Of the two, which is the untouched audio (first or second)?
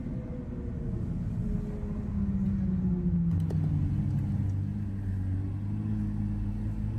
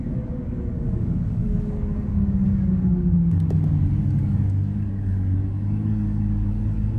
first